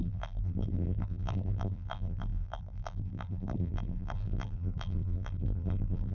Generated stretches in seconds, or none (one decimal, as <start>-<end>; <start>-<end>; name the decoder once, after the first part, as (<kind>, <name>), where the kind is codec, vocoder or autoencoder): 0.0-6.1 (vocoder, BigVGAN v2)